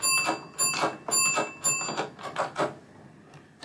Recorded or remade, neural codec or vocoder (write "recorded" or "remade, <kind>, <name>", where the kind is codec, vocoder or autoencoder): recorded